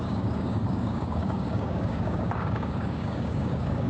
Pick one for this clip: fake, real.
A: fake